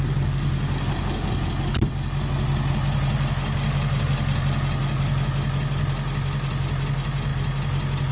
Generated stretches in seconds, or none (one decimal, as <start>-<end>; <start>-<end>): none